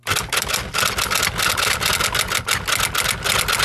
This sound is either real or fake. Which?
real